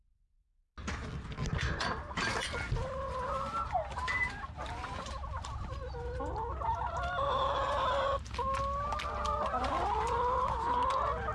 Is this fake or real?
real